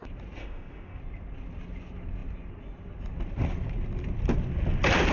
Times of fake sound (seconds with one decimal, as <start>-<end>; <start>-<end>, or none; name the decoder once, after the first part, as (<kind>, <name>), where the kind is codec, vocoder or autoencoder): 0.4-1.0 (autoencoder, DAC-VAE)